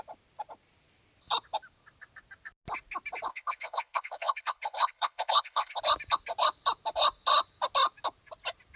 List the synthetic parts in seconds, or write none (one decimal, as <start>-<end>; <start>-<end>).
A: 3.3-5.8